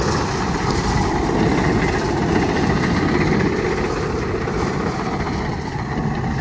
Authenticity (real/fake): fake